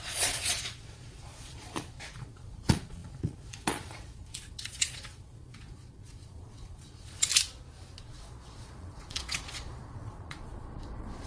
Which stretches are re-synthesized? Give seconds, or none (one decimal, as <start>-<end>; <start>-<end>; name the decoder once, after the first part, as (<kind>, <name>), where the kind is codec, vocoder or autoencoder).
0.0-7.3 (vocoder, Vocos); 8.0-11.3